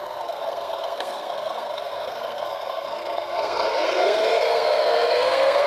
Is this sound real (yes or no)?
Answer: no